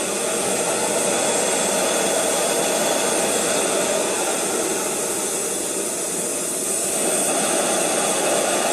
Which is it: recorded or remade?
recorded